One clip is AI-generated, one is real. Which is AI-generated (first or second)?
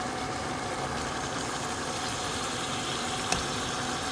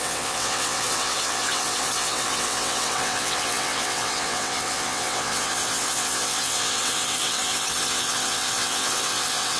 second